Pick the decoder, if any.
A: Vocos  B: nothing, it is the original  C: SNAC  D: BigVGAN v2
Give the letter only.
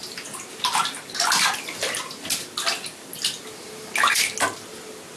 B